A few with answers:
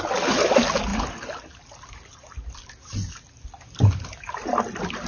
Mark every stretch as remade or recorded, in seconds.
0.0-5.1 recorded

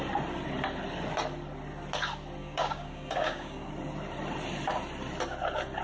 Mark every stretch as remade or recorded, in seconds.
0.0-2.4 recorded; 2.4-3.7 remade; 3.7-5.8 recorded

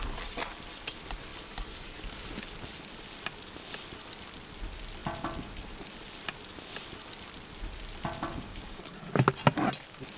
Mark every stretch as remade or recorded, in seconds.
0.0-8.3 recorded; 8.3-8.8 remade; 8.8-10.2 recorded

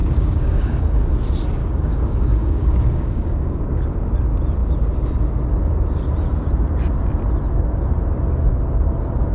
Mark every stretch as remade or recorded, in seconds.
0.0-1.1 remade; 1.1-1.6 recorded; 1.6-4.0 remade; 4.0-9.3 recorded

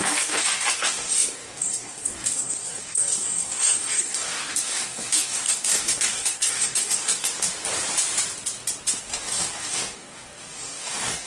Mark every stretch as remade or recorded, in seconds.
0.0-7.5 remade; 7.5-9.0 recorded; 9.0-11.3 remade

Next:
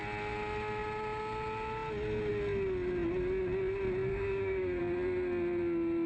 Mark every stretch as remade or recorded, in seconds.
0.0-4.1 recorded; 4.1-4.8 remade; 4.8-6.1 recorded

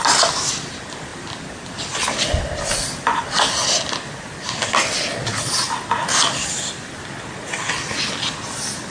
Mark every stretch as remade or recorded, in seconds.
0.0-8.9 recorded

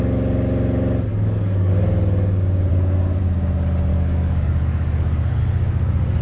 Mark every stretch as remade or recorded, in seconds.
0.0-1.1 recorded; 1.1-1.7 remade; 1.7-2.7 recorded; 2.7-3.2 remade; 3.2-3.9 recorded; 3.9-5.4 remade; 5.4-6.2 recorded